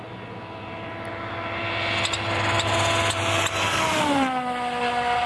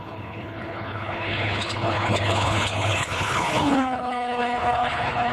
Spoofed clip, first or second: second